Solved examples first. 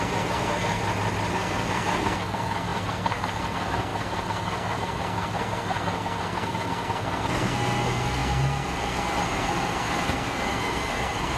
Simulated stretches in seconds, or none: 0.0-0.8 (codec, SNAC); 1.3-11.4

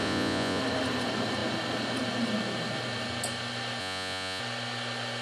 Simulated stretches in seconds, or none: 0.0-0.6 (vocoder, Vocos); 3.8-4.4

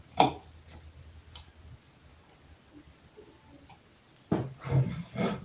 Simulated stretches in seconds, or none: none